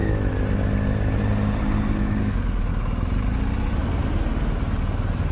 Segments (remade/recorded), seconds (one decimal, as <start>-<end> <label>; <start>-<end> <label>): 0.0-2.0 recorded; 2.0-2.7 remade; 2.7-5.3 recorded